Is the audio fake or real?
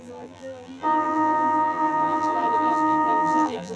fake